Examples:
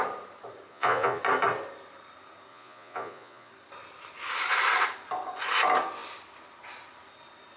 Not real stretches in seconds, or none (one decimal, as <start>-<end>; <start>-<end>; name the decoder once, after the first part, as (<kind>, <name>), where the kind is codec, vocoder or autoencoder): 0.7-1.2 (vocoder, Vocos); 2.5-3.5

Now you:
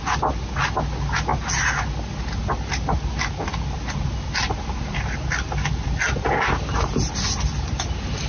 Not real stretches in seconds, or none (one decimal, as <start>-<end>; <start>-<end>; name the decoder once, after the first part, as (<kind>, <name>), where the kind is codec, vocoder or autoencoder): none

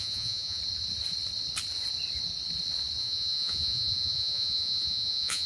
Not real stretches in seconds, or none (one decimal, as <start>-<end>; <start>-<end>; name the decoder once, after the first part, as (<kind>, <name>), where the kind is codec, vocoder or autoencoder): 0.0-0.6 (vocoder, Vocos); 3.0-5.5

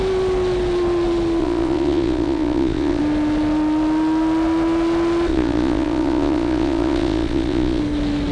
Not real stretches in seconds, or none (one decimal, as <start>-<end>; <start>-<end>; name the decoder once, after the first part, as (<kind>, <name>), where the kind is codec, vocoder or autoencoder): 1.4-3.0 (vocoder, Vocos); 5.3-7.8

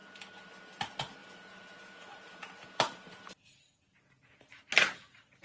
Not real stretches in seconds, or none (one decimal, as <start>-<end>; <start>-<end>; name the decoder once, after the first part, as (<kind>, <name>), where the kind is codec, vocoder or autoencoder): 1.2-4.4 (vocoder, Vocos)

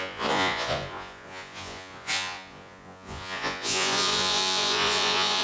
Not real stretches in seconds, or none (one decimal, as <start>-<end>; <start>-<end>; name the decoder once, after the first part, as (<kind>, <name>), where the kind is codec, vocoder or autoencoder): 0.0-5.4 (vocoder, Vocos)

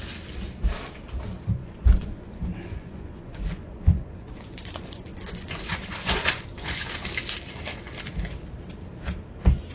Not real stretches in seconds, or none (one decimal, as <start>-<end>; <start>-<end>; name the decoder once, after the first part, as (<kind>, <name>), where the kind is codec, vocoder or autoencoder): 1.6-6.8 (vocoder, Vocos)

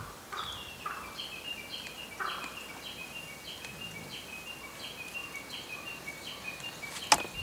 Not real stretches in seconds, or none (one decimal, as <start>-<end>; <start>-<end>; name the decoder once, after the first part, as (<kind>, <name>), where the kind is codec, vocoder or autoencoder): none